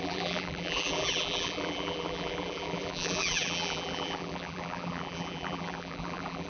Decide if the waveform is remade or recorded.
remade